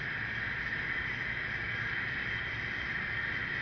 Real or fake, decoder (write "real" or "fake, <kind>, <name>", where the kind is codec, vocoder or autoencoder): real